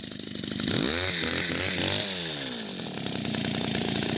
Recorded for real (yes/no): yes